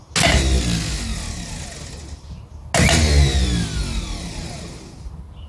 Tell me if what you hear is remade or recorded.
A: recorded